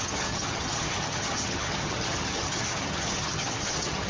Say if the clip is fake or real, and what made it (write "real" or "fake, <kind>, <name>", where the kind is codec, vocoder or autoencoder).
fake, vocoder, HiFi-GAN